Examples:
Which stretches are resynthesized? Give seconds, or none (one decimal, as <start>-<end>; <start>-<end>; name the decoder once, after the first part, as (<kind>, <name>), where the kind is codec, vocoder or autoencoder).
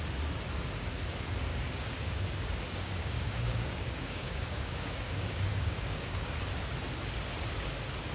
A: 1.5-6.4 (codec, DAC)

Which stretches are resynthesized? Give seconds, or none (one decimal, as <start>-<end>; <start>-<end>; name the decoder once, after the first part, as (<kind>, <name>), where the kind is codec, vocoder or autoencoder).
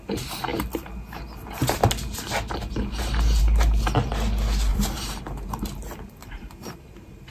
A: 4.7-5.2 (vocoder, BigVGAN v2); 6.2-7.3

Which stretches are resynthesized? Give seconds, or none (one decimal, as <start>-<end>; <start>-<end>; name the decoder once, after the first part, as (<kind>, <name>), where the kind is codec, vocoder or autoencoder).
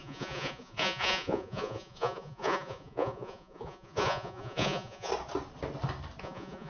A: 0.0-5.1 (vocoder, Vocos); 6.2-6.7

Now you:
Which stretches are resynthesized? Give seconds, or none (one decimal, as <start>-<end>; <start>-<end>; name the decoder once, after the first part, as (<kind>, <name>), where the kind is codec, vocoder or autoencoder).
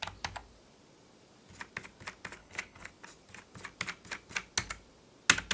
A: 2.4-2.9 (codec, HILCodec)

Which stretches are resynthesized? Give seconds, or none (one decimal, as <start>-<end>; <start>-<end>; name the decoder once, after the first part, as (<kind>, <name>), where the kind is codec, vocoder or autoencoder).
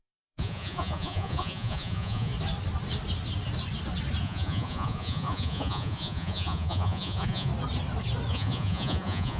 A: 0.0-2.3 (vocoder, Vocos); 4.2-7.5; 8.3-9.4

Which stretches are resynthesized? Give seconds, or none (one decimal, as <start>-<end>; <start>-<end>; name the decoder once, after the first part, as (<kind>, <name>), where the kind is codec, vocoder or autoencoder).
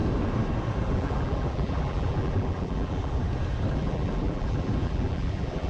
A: 0.9-3.2 (vocoder, BigVGAN v2); 3.7-5.7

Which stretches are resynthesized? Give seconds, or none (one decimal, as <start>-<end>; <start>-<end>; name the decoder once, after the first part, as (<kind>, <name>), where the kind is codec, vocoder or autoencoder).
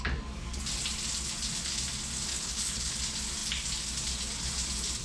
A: 2.3-3.0 (codec, HILCodec)